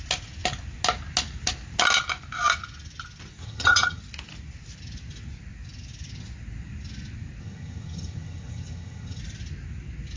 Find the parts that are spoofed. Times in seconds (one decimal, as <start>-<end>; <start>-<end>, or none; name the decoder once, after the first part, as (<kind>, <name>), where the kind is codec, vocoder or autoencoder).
3.4-4.0 (vocoder, HiFi-GAN); 7.4-9.2